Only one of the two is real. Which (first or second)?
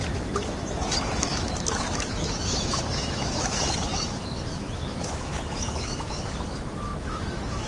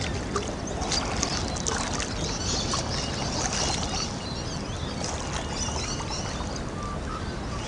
second